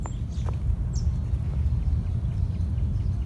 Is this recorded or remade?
recorded